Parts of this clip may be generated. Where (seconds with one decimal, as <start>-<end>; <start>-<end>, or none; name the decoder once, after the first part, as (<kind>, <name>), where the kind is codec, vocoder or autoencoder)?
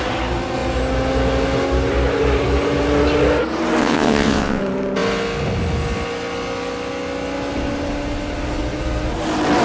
3.8-4.6 (vocoder, WaveNeXt)